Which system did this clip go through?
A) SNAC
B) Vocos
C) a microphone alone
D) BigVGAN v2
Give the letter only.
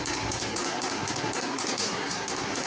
A